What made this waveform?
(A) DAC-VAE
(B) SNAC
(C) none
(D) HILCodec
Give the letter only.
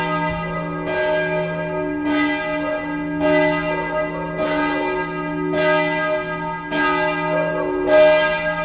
C